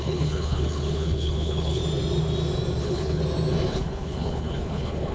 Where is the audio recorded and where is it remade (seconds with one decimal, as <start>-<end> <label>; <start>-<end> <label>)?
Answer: 0.0-1.8 remade; 1.8-2.8 recorded; 2.8-3.2 remade; 3.2-3.7 recorded; 3.7-5.1 remade